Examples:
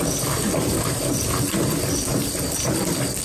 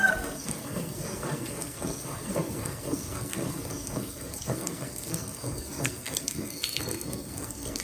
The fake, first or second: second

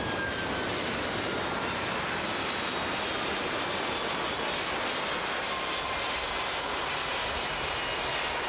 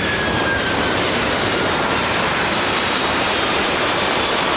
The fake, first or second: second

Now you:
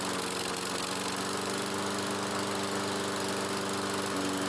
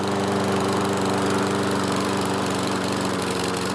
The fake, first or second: second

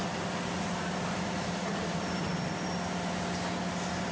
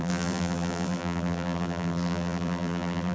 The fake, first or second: second